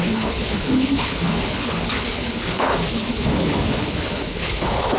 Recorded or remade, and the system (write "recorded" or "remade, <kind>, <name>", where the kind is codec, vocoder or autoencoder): remade, codec, HILCodec